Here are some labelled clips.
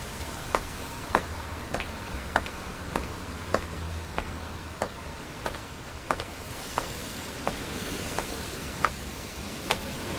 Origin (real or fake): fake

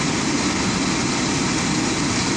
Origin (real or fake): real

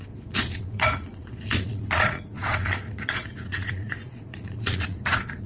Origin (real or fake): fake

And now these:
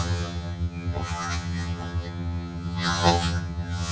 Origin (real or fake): fake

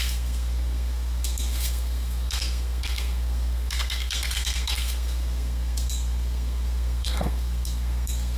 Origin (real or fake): fake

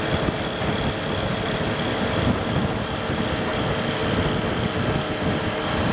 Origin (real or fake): real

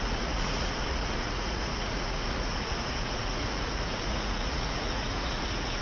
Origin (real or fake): fake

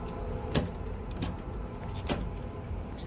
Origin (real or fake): fake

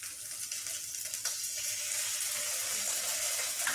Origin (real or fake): real